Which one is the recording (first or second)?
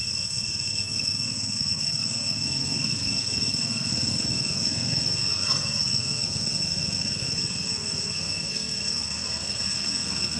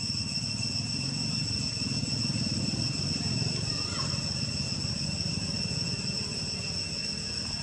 second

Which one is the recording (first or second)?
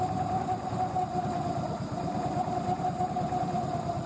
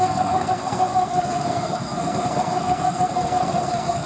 first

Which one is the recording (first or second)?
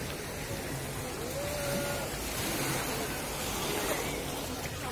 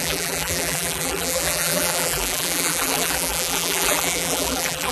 first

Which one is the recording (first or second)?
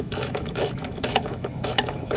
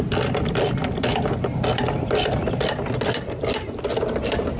second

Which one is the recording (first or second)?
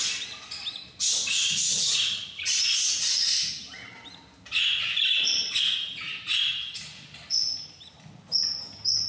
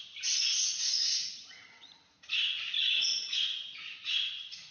first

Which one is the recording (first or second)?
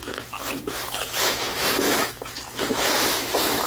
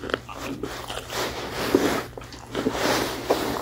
second